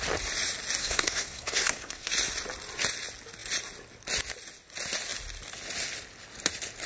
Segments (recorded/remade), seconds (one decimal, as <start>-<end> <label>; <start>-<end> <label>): 0.0-0.8 recorded; 0.8-2.1 remade; 2.1-6.9 recorded